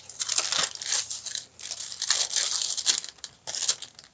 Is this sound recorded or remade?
recorded